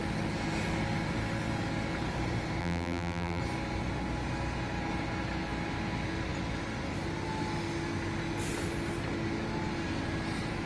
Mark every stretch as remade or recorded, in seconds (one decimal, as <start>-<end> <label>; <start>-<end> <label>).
0.0-2.6 recorded; 2.6-3.4 remade; 3.4-10.7 recorded

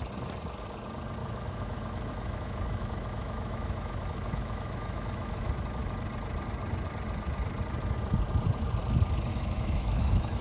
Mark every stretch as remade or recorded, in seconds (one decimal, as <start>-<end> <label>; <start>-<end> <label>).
0.0-1.2 recorded; 1.2-5.5 remade; 5.5-9.3 recorded; 9.3-10.4 remade

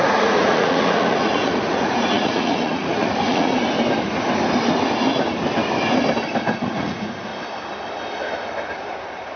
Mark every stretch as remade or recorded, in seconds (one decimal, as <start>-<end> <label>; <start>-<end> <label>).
0.0-3.6 remade; 3.6-6.6 recorded; 6.6-7.3 remade; 7.3-9.0 recorded; 9.0-9.4 remade

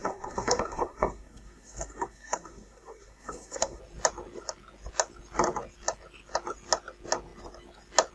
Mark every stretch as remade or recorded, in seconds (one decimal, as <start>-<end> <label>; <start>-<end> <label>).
0.0-3.8 remade; 3.8-8.1 recorded

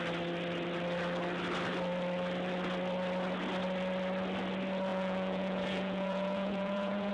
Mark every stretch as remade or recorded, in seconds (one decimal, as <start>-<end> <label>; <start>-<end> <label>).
0.0-4.9 recorded; 4.9-7.1 remade

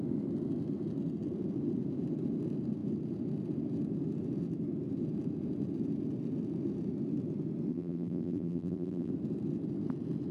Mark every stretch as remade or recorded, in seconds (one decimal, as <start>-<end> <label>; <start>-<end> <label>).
0.0-7.7 recorded; 7.7-9.1 remade; 9.1-10.3 recorded